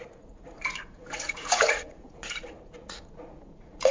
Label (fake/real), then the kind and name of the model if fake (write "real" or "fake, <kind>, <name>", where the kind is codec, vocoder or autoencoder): fake, vocoder, Vocos